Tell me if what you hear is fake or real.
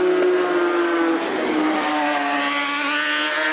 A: real